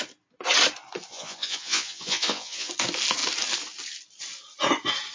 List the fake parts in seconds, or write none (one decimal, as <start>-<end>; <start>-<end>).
1.1-2.7